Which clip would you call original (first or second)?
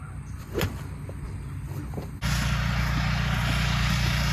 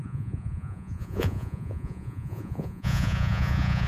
first